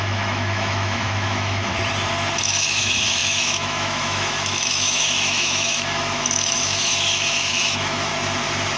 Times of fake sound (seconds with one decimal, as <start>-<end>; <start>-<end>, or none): 0.0-1.7; 2.4-8.1